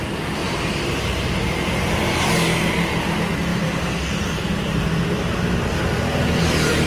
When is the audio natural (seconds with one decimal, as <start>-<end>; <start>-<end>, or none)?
0.0-0.4; 2.3-3.5; 5.3-6.9